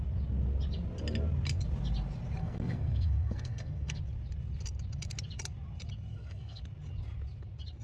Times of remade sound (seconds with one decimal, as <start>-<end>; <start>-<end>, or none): 2.4-4.0; 6.1-6.6